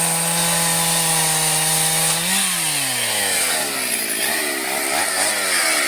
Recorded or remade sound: recorded